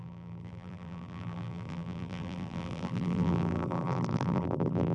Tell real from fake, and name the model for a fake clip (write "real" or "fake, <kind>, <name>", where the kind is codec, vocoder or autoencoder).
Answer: fake, vocoder, BigVGAN v2